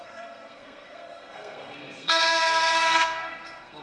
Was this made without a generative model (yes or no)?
no